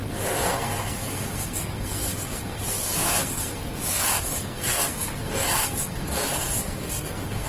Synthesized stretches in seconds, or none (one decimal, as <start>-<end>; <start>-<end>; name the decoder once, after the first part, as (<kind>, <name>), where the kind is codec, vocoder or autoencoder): 0.0-7.5 (codec, SNAC)